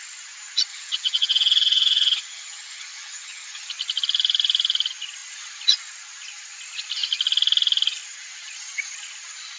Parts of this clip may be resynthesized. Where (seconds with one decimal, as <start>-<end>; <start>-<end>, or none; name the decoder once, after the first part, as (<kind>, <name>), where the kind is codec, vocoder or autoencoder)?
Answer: 0.7-3.7 (vocoder, HiFi-GAN)